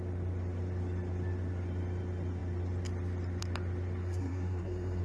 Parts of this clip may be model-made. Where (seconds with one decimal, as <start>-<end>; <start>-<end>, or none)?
4.0-5.0